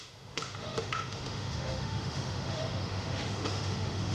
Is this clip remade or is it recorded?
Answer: remade